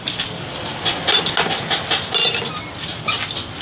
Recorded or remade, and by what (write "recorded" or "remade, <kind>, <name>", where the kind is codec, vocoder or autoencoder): recorded